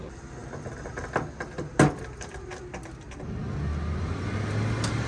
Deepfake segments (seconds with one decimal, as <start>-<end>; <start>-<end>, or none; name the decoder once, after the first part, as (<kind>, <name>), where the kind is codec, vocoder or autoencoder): none